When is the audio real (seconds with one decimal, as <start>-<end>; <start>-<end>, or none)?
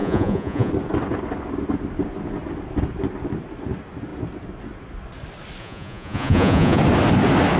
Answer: 0.7-5.6; 6.8-7.6